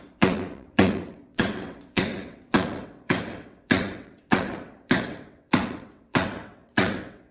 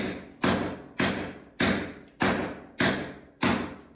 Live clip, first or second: second